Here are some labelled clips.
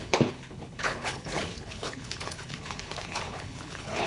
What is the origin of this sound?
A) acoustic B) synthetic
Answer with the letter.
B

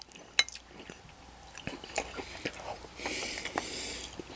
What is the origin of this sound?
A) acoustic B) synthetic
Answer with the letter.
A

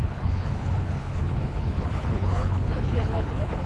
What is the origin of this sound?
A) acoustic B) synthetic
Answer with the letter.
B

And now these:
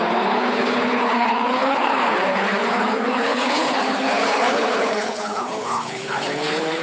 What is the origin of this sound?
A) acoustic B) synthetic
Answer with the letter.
B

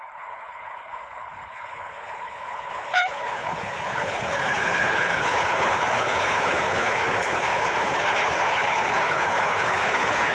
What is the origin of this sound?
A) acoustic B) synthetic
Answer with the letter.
B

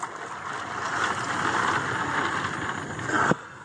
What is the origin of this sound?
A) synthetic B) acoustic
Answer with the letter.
B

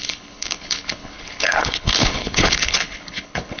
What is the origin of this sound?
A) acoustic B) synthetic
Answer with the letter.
B